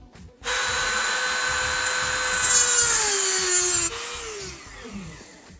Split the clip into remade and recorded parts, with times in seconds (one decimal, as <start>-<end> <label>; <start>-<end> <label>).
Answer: 0.0-1.2 remade; 1.2-4.6 recorded; 4.6-5.6 remade